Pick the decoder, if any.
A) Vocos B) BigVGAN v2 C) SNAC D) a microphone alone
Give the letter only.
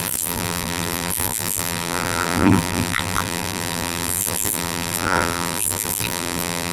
B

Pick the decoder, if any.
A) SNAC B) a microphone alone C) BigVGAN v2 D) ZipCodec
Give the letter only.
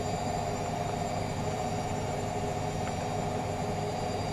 C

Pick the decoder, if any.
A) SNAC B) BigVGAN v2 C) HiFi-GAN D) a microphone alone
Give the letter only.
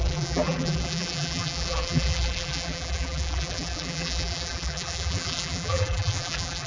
B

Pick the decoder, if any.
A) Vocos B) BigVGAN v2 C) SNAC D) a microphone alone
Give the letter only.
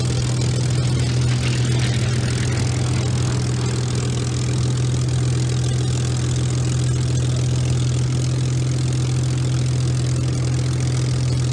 D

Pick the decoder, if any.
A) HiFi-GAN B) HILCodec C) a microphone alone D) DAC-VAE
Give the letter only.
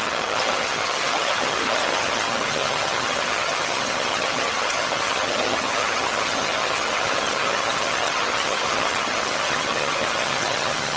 A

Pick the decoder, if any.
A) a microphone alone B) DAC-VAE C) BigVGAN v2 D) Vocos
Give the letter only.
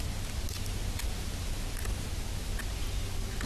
A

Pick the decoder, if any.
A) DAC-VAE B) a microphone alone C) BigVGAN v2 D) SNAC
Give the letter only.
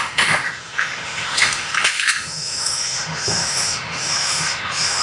A